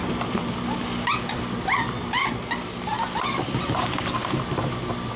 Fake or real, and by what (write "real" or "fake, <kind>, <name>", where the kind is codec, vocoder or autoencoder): real